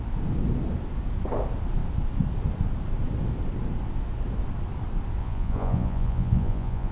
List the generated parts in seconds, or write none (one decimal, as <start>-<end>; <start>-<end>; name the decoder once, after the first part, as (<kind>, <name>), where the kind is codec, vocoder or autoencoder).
5.2-6.9 (vocoder, Vocos)